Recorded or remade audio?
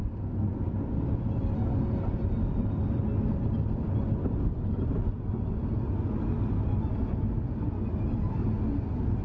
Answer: recorded